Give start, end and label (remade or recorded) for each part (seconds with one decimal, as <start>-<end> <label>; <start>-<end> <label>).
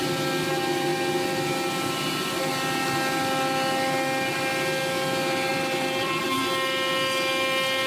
0.0-5.5 recorded; 5.5-6.4 remade; 6.4-7.9 recorded